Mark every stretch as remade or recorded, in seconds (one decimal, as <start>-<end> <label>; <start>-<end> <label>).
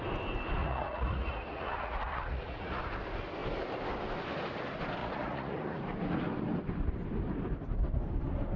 0.0-0.6 recorded; 0.6-2.8 remade; 2.8-5.0 recorded; 5.0-5.8 remade; 5.8-8.6 recorded